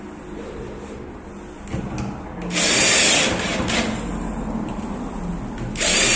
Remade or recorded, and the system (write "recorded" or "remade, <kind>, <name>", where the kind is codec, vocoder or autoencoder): recorded